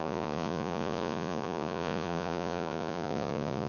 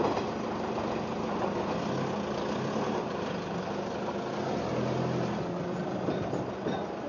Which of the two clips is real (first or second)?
second